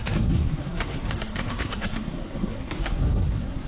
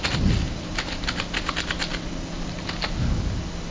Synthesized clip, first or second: first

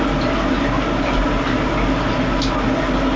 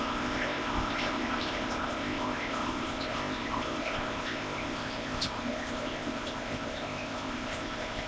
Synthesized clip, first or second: second